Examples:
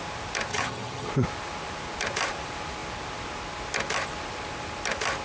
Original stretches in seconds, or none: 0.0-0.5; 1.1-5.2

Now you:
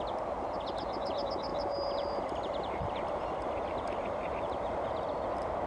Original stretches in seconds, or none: 0.0-1.5; 4.9-5.7

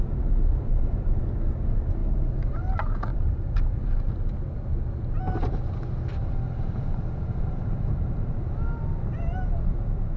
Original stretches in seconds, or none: 0.0-0.7; 1.2-2.0; 2.7-3.1; 4.0-6.2; 8.4-10.2

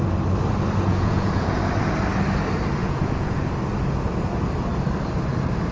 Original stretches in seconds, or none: 0.0-0.9; 1.6-2.8; 3.5-5.7

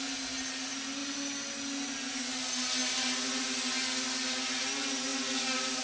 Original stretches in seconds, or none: 0.0-5.8